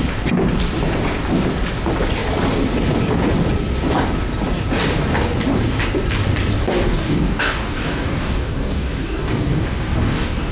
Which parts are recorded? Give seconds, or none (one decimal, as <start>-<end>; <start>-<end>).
0.0-6.6

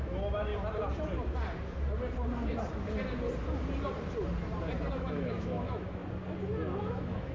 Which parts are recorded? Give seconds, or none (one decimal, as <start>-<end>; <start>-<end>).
0.5-4.9; 6.0-6.8

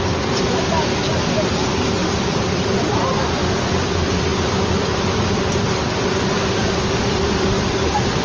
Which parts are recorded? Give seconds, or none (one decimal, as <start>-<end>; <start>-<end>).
0.0-2.0; 3.0-8.2

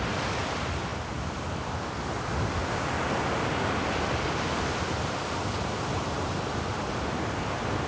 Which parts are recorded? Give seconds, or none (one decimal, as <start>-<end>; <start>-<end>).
0.0-7.9